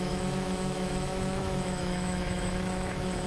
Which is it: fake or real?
fake